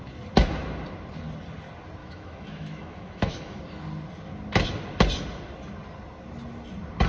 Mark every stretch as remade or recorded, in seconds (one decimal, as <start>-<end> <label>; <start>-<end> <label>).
0.0-2.0 recorded; 2.0-3.6 remade; 3.6-7.1 recorded